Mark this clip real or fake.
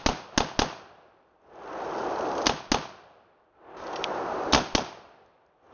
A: real